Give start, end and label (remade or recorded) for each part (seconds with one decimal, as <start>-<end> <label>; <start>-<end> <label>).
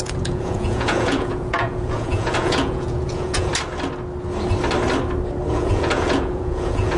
0.0-3.5 remade; 3.5-5.5 recorded; 5.5-7.0 remade